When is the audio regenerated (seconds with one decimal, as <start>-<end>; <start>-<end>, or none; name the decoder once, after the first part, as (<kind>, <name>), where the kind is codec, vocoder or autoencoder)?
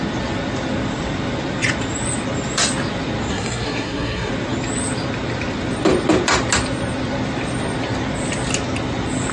3.3-4.3 (codec, SNAC)